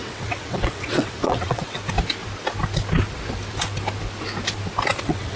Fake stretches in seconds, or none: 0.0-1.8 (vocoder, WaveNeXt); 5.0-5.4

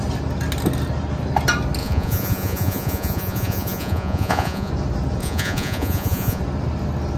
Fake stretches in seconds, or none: 1.8-4.7 (vocoder, Vocos); 5.2-6.4

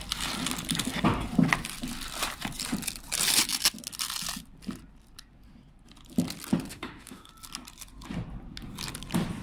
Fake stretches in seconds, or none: 6.7-7.3 (autoencoder, DAC-VAE)